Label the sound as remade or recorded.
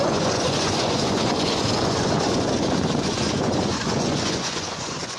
remade